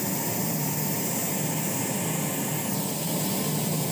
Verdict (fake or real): real